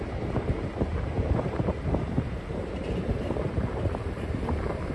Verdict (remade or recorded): remade